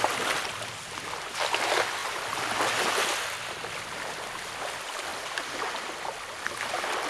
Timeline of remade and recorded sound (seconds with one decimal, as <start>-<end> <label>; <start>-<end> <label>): 0.0-5.1 recorded; 5.1-5.9 remade; 5.9-7.1 recorded